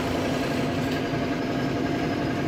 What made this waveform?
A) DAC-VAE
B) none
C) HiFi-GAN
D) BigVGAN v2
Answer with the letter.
B